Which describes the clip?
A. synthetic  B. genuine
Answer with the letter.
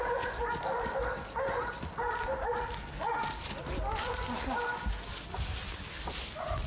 B